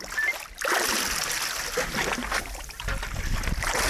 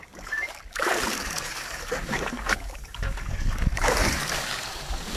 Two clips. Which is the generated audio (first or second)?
second